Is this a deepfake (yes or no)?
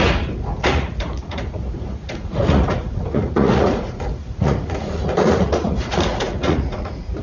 yes